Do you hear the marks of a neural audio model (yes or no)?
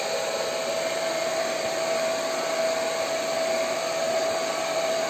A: yes